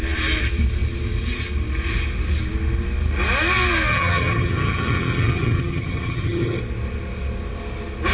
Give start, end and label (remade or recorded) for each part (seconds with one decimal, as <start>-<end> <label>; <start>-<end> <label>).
0.0-3.9 recorded; 3.9-6.6 remade; 6.6-8.1 recorded